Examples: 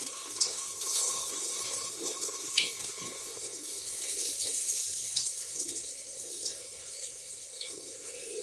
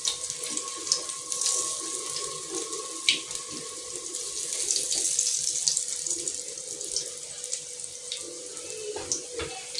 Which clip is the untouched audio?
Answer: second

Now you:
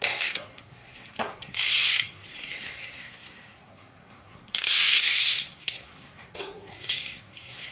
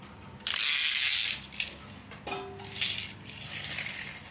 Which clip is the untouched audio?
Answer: second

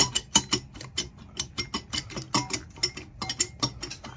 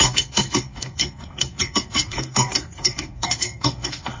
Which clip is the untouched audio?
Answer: first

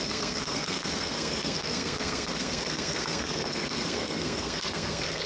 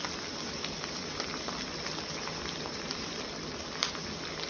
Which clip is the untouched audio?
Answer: second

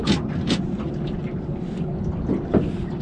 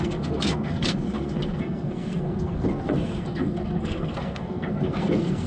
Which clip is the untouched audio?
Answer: first